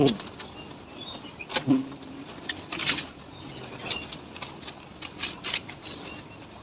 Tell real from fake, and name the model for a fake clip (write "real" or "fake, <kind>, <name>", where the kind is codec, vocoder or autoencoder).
real